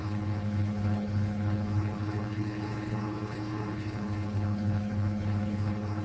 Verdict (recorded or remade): remade